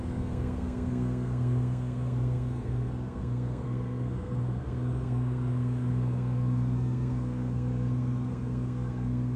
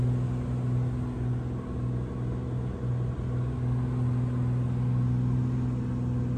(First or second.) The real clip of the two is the second